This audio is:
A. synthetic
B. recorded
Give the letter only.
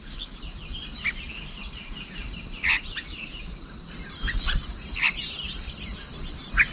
B